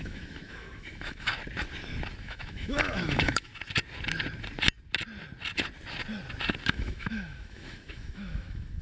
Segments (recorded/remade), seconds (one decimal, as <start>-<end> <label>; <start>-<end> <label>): 0.0-1.3 remade; 1.3-2.2 recorded; 2.2-3.5 remade; 3.5-6.7 recorded; 6.7-8.8 remade

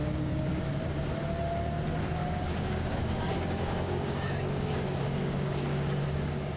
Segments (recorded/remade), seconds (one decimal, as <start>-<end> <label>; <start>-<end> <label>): 0.0-0.6 remade; 0.6-2.2 recorded; 2.2-6.6 remade

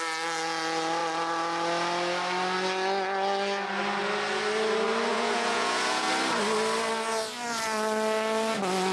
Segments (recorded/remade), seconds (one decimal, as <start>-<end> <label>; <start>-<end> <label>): 0.0-5.1 recorded; 5.1-6.1 remade; 6.1-8.9 recorded